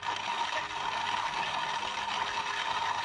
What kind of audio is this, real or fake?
real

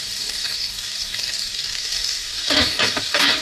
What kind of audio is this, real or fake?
fake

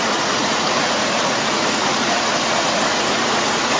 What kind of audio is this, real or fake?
fake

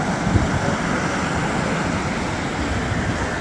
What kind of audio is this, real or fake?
real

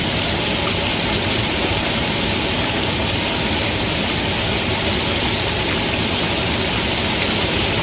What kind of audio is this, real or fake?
real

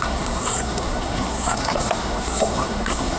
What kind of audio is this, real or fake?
fake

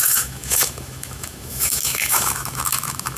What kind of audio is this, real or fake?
fake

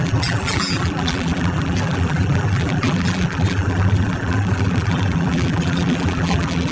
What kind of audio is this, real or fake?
fake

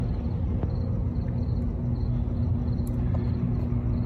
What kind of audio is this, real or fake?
real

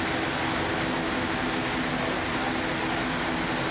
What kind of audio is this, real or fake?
real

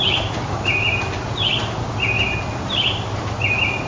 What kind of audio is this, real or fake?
real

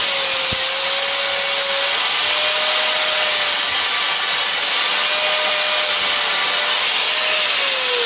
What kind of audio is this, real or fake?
real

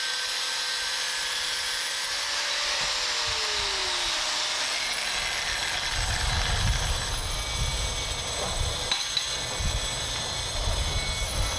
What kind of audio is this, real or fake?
real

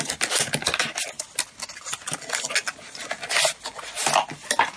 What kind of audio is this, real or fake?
real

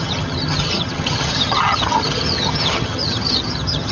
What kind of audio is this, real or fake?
fake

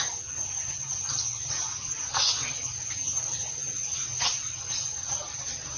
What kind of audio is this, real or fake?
real